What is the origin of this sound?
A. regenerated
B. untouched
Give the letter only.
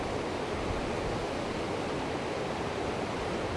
B